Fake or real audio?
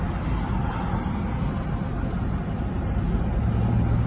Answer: real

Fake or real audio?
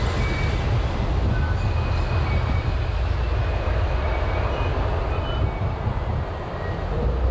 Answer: real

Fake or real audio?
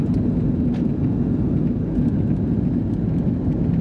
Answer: real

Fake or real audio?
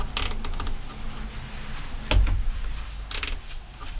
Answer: real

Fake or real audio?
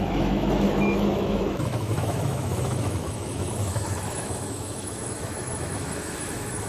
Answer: fake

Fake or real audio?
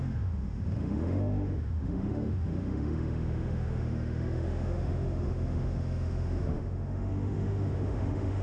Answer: fake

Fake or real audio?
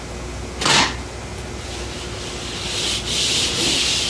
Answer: real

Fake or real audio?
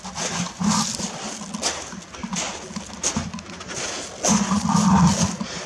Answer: real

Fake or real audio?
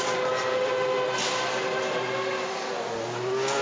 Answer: real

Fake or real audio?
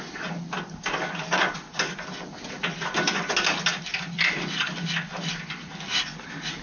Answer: real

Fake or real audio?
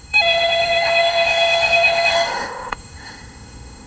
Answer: fake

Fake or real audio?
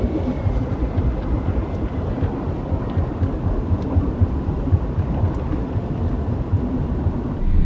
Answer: real